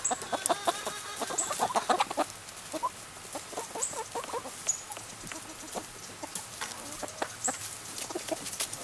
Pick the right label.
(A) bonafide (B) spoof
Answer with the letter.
A